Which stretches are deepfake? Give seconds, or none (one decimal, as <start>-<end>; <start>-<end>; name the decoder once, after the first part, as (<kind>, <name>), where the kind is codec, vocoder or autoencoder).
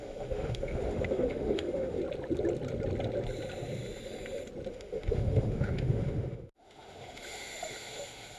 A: 0.0-2.0 (autoencoder, DAC-VAE); 4.7-8.4